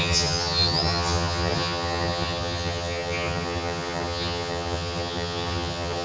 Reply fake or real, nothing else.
fake